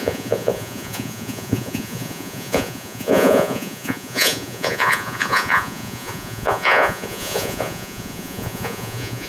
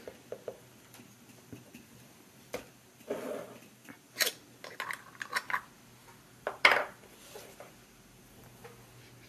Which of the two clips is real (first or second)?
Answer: second